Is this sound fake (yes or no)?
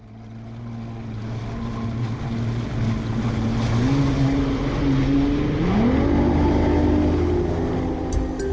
no